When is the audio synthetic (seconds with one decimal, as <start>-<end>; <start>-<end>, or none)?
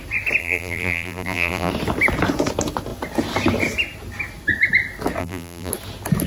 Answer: 0.4-1.7; 5.2-5.7